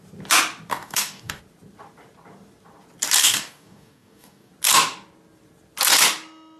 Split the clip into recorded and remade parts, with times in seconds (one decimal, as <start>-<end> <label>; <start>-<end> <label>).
0.0-0.7 recorded; 0.7-1.4 remade; 1.4-3.2 recorded; 3.2-4.5 remade; 4.5-6.6 recorded